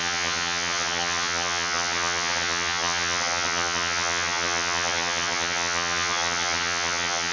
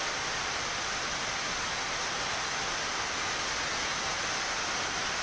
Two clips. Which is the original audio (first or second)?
second